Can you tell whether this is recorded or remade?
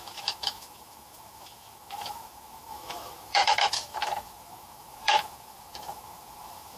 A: remade